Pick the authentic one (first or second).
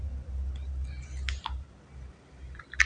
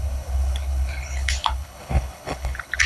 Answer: first